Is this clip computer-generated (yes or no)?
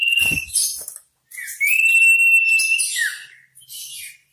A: no